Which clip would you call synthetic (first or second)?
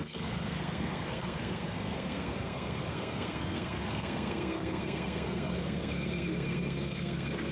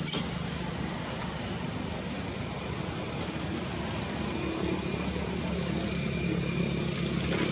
first